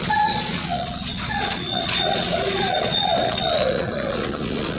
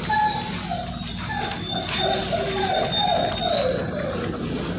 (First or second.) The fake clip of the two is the first